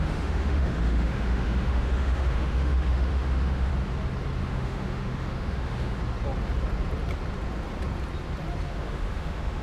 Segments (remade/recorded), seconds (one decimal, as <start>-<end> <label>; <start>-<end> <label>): 0.0-3.7 remade; 3.7-4.4 recorded; 4.4-6.0 remade; 6.0-8.7 recorded; 8.7-9.6 remade